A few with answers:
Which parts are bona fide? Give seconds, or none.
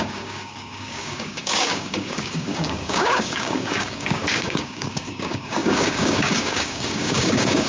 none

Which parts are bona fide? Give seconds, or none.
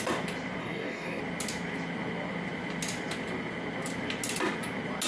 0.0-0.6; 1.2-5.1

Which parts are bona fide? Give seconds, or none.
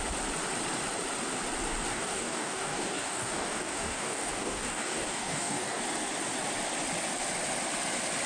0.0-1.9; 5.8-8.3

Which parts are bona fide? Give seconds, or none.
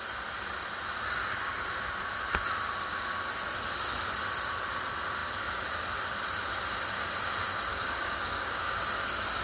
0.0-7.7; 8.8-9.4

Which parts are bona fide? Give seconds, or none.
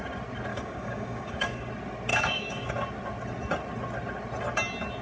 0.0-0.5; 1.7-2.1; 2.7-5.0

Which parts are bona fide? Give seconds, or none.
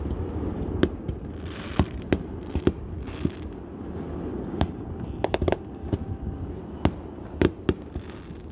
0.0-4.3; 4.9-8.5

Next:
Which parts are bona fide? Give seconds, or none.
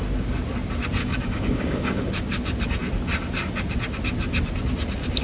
0.0-1.0; 2.1-5.2